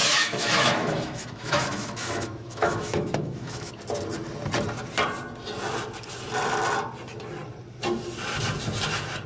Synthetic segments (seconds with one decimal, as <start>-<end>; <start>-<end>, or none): 0.0-3.7